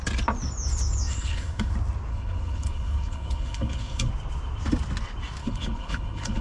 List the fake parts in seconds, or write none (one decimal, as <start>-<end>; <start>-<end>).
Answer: 1.1-1.7; 2.1-4.1; 5.4-6.4